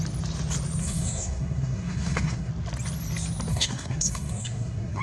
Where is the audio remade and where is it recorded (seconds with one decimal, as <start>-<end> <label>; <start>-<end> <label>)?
0.0-0.8 recorded; 0.8-2.5 remade; 2.5-3.5 recorded; 3.5-5.0 remade